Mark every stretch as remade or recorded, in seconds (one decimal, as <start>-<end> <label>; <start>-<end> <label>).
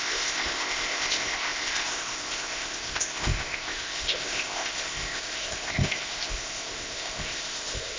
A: 0.0-8.0 remade